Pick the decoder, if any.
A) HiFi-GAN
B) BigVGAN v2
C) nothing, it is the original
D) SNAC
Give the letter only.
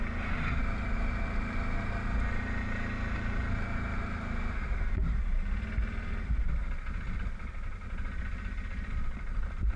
C